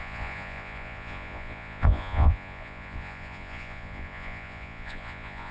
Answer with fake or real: fake